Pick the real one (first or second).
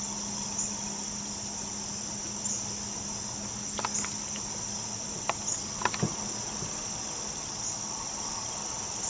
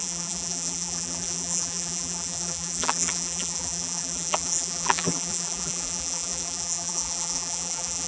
first